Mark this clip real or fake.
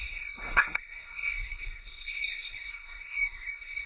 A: fake